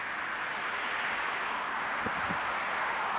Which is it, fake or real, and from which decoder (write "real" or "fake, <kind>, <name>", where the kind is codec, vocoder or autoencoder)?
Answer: real